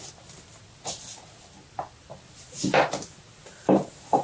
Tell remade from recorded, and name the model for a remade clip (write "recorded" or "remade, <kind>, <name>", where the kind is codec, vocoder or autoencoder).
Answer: recorded